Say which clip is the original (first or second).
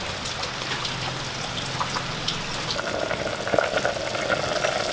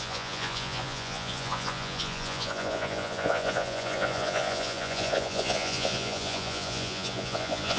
first